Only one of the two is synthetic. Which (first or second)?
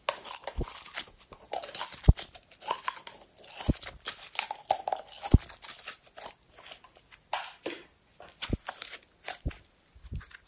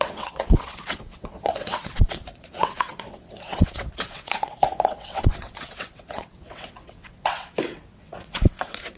second